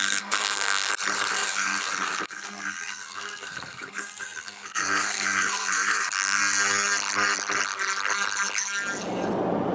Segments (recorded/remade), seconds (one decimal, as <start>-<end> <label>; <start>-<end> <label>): 0.0-0.9 remade; 0.9-1.3 recorded; 1.3-6.4 remade; 6.4-9.7 recorded